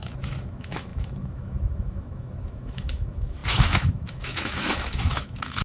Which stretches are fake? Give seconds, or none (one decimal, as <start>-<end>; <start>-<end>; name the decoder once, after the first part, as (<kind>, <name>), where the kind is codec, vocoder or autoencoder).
0.0-5.6 (autoencoder, DAC-VAE)